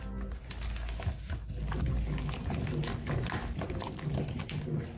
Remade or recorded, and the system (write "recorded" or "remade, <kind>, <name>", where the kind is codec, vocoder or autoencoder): recorded